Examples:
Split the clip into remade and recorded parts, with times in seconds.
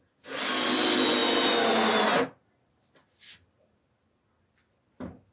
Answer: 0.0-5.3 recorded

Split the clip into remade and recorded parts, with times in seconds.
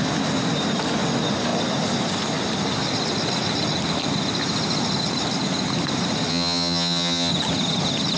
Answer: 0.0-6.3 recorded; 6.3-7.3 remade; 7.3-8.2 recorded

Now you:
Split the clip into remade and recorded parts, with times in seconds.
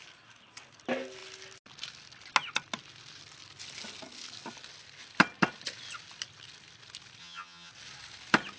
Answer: 0.0-7.2 recorded; 7.2-7.7 remade; 7.7-8.6 recorded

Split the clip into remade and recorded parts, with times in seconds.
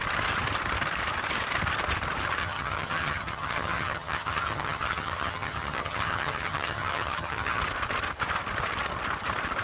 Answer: 0.0-2.4 recorded; 2.4-7.6 remade; 7.6-9.6 recorded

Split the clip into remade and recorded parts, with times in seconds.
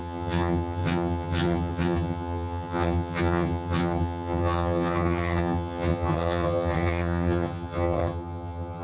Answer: 0.0-8.8 remade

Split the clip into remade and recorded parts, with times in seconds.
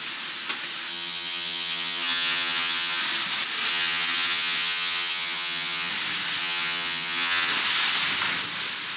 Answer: 0.0-0.9 recorded; 0.9-3.0 remade; 3.0-3.7 recorded; 3.7-5.9 remade; 5.9-6.4 recorded; 6.4-7.5 remade; 7.5-9.0 recorded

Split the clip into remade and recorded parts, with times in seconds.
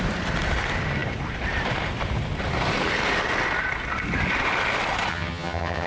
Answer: 0.0-5.1 recorded; 5.1-5.9 remade